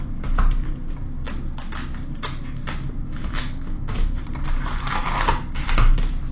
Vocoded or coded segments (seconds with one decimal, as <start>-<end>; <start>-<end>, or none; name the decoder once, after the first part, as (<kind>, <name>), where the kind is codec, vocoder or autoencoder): 3.2-4.2 (autoencoder, DAC-VAE)